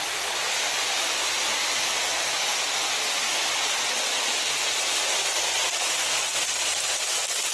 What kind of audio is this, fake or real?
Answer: real